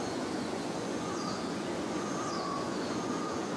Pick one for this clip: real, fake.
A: fake